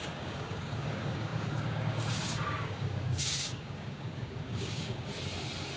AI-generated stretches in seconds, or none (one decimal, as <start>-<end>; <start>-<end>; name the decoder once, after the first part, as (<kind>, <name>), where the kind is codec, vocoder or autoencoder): 0.0-5.1 (codec, DAC)